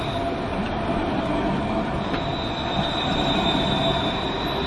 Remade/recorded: recorded